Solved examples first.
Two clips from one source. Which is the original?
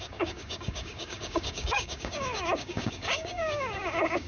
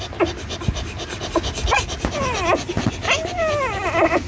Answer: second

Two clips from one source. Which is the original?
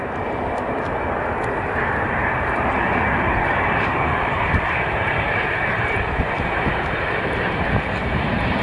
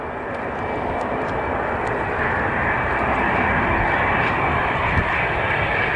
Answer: second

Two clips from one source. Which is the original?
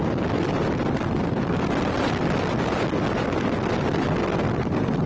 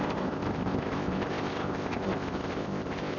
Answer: first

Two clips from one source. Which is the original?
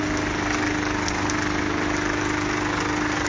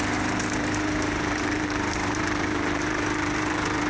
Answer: first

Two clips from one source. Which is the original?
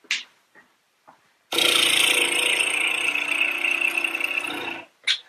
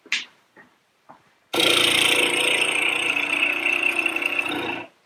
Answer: first